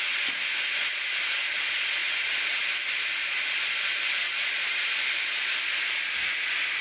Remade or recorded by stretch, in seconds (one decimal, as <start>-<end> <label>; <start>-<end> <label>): 0.0-0.8 recorded; 0.8-2.6 remade; 2.6-3.2 recorded; 3.2-3.7 remade; 3.7-4.2 recorded; 4.2-4.9 remade; 4.9-6.8 recorded